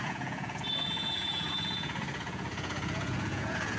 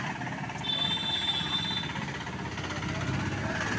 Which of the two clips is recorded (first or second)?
second